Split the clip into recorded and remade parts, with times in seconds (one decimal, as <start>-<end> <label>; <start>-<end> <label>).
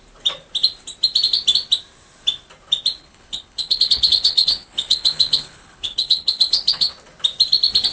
0.0-3.0 recorded; 3.0-6.9 remade; 6.9-7.9 recorded